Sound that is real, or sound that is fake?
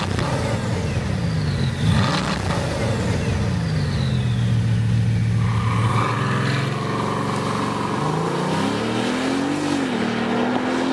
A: real